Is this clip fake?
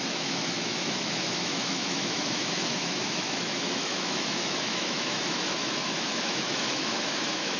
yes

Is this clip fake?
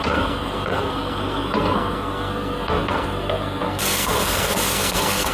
yes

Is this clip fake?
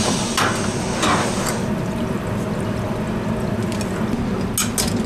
no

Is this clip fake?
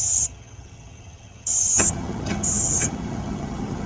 yes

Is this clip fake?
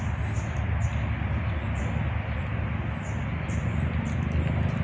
no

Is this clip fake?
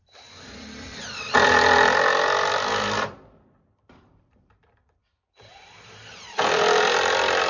yes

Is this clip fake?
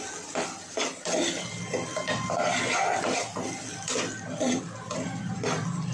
no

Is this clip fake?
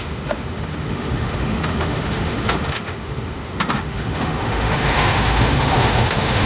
yes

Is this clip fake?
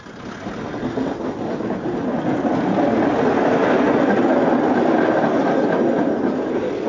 no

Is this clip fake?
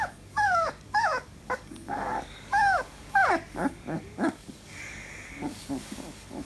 yes